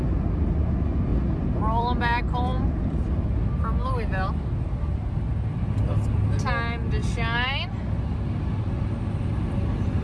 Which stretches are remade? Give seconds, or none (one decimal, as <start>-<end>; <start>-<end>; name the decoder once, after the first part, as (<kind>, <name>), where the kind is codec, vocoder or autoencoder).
1.1-2.0 (vocoder, BigVGAN v2)